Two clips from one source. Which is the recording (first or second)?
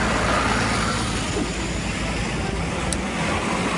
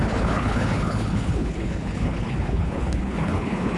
first